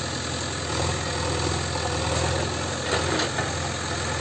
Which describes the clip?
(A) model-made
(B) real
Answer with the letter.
B